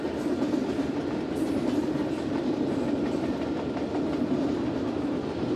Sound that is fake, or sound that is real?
fake